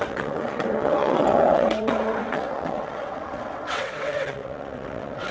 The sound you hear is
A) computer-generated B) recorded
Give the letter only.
A